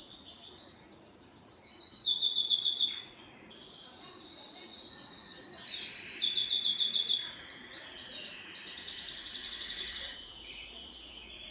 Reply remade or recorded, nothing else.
remade